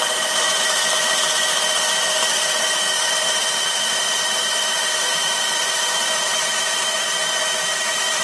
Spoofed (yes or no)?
yes